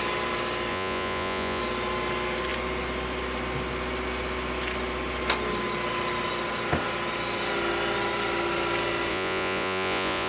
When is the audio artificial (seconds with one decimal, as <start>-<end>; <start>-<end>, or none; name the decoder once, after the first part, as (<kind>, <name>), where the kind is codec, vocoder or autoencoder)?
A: 0.7-1.6 (vocoder, Vocos); 9.1-10.3